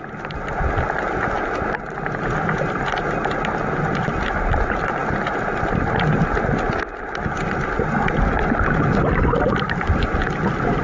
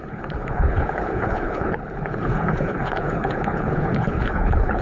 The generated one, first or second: second